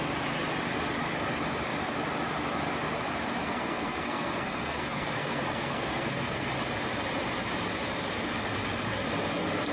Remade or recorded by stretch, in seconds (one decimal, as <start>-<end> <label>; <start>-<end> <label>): 0.0-3.4 recorded; 3.4-6.5 remade; 6.5-9.7 recorded